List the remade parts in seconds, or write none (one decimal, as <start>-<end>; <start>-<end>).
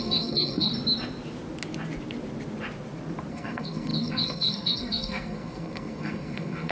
0.0-0.7; 3.3-6.7